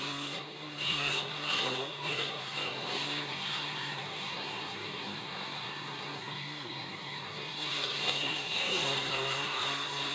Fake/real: fake